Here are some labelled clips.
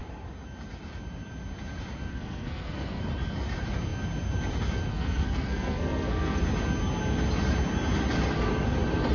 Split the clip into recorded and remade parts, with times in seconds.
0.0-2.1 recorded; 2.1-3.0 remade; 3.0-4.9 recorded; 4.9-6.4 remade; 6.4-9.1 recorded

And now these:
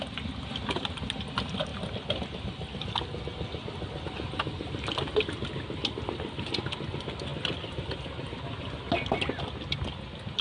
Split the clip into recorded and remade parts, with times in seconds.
0.0-10.4 recorded

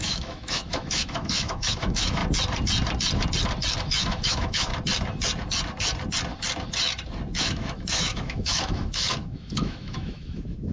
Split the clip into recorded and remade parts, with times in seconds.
0.0-2.2 remade; 2.2-3.8 recorded; 3.8-4.7 remade; 4.7-7.4 recorded; 7.4-10.7 remade